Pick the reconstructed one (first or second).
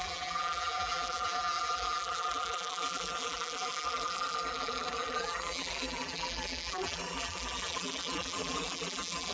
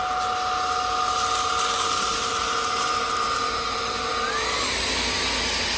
first